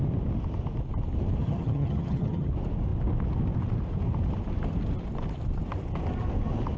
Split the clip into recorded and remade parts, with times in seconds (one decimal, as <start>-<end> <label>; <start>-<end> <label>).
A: 0.0-1.4 recorded; 1.4-2.5 remade; 2.5-6.8 recorded